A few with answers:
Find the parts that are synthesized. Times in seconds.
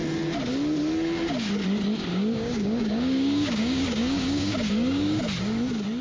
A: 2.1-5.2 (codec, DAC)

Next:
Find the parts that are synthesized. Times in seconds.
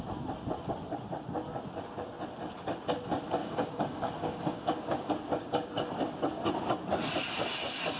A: 3.4-5.1 (codec, DAC)